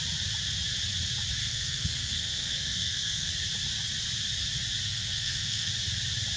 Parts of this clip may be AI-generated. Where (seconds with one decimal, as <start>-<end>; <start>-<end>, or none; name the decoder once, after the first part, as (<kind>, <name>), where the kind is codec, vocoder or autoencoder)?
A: 1.4-3.3 (codec, SNAC); 4.8-5.7